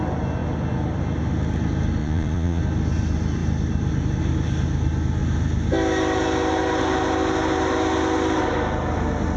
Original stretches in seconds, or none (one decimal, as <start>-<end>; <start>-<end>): 0.0-2.0; 2.6-9.4